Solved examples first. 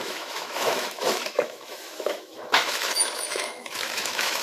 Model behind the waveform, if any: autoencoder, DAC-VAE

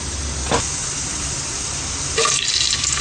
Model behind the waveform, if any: none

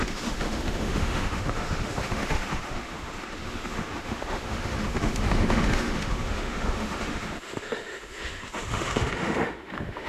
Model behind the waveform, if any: autoencoder, DAC-VAE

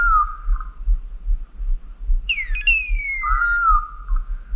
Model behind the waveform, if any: none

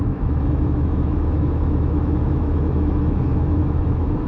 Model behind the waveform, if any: autoencoder, DAC-VAE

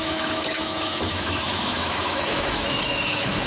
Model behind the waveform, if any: autoencoder, DAC-VAE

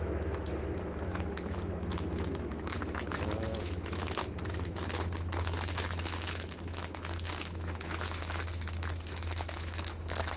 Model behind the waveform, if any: autoencoder, DAC-VAE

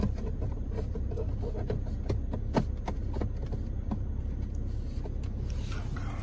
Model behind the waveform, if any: none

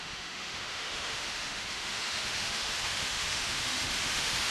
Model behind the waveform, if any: autoencoder, DAC-VAE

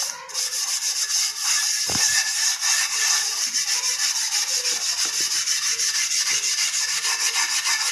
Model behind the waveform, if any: none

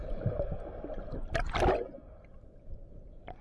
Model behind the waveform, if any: none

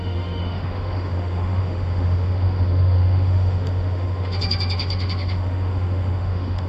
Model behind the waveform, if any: autoencoder, DAC-VAE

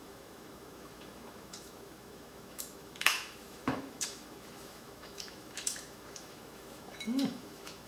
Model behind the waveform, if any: autoencoder, DAC-VAE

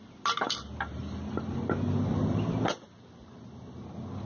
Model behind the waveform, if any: none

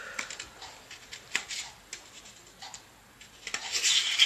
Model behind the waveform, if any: none